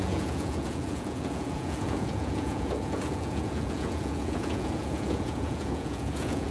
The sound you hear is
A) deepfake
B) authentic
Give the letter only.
A